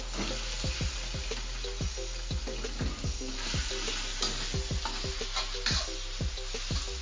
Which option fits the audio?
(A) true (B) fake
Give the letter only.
A